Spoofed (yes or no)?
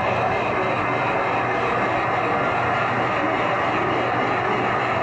no